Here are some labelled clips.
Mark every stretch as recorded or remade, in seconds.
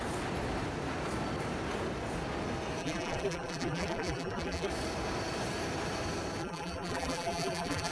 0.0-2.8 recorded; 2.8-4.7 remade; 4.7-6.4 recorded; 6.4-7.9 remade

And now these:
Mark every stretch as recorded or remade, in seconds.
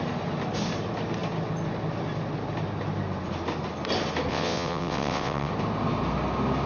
0.0-4.3 recorded; 4.3-5.5 remade; 5.5-6.7 recorded